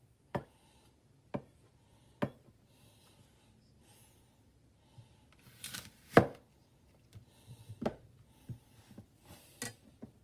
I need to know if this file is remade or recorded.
recorded